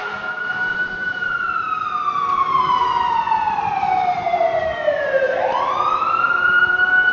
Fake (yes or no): yes